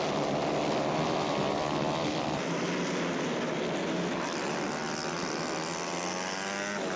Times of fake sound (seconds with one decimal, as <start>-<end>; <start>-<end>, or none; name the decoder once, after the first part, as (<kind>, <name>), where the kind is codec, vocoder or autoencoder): none